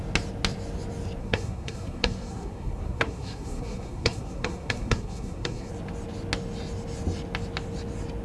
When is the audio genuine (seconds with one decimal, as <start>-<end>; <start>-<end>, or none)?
0.0-1.2; 5.7-8.2